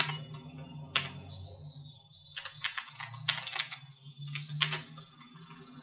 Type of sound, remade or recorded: recorded